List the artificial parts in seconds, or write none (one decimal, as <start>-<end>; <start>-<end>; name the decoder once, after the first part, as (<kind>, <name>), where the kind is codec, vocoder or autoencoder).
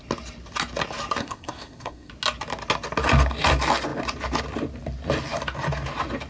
1.2-2.1 (codec, SNAC)